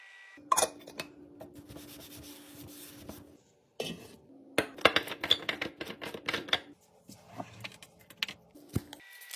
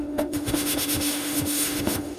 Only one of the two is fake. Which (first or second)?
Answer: second